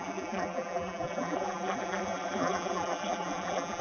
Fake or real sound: fake